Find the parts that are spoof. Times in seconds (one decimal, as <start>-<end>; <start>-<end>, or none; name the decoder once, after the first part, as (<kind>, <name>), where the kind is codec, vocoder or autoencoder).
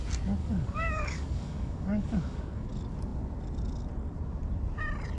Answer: 0.4-2.7 (codec, DAC)